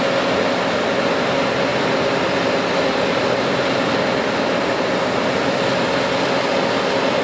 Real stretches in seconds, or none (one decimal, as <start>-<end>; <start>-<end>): 0.0-1.7; 5.8-7.2